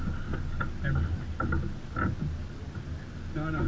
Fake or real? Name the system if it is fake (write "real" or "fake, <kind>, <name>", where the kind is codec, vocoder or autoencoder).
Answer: real